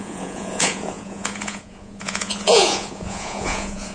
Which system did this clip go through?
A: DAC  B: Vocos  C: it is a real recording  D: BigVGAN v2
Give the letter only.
B